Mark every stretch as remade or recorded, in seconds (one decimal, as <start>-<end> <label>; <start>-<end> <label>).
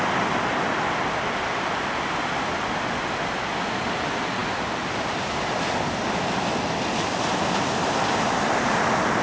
0.0-9.2 recorded